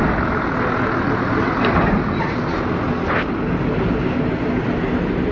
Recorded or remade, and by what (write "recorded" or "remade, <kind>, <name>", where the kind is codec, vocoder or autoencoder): recorded